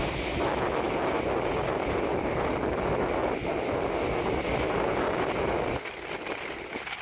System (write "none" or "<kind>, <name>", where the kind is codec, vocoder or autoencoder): none